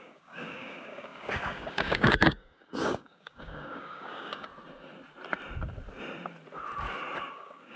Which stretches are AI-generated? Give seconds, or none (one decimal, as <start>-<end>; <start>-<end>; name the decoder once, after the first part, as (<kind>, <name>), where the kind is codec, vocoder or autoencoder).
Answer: 0.0-4.5 (codec, DAC); 7.3-7.8